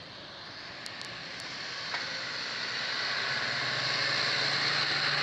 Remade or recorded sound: recorded